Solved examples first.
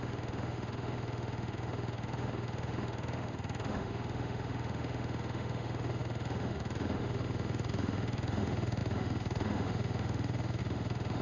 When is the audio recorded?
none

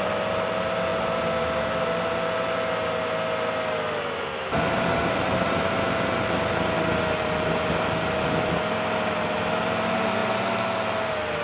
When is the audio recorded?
0.0-11.4

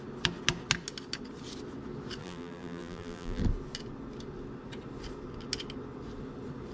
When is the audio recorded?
0.0-2.2; 3.4-6.7

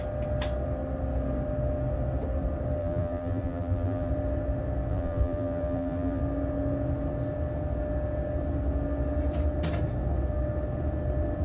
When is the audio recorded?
0.0-2.8; 4.1-4.9; 6.2-11.4